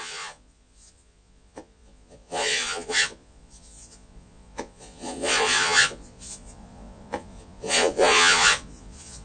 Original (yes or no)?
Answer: no